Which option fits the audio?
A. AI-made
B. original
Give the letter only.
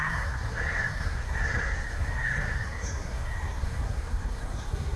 A